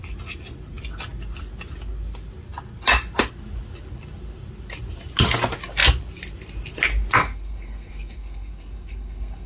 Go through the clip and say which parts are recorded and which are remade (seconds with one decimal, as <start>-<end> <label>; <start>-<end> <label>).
0.0-7.2 recorded; 7.2-9.5 remade